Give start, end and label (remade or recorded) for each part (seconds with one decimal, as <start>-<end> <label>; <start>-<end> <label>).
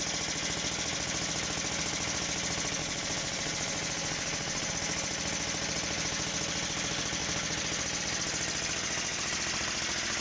0.0-2.8 recorded; 2.8-4.7 remade; 4.7-10.2 recorded